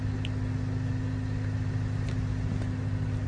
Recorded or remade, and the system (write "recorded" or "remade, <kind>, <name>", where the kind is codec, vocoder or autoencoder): recorded